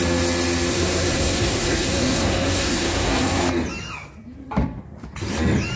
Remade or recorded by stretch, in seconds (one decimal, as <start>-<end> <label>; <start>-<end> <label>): 0.0-0.7 recorded; 0.7-3.4 remade; 3.4-5.8 recorded

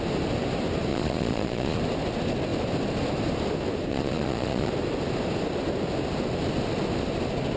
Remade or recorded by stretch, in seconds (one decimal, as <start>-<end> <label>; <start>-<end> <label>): 0.0-0.9 recorded; 0.9-1.8 remade; 1.8-3.9 recorded; 3.9-4.7 remade; 4.7-7.6 recorded

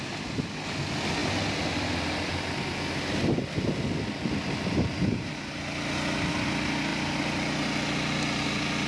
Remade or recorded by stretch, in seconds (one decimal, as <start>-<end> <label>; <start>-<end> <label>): 0.0-8.9 recorded

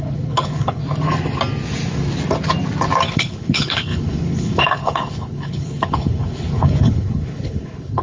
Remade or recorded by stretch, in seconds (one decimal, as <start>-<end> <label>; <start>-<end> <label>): 0.0-0.8 remade; 0.8-3.1 recorded; 3.1-8.0 remade

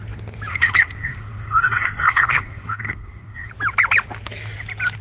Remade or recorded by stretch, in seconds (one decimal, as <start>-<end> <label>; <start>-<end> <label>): 0.0-0.5 recorded; 0.5-3.5 remade; 3.5-5.0 recorded

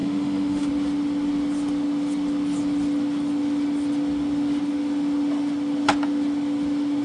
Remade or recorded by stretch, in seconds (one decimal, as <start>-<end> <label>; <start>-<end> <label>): 0.0-0.7 remade; 0.7-7.0 recorded

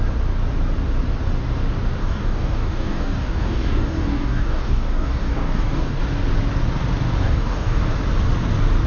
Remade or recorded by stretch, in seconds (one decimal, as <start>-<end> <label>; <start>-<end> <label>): 0.0-2.0 recorded; 2.0-6.0 remade; 6.0-7.2 recorded; 7.2-7.9 remade; 7.9-8.9 recorded

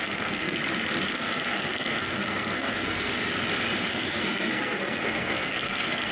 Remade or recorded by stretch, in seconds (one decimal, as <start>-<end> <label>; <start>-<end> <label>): 0.0-0.6 remade; 0.6-1.1 recorded; 1.1-3.1 remade; 3.1-3.9 recorded; 3.9-6.1 remade